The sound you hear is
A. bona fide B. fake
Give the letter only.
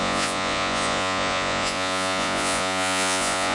B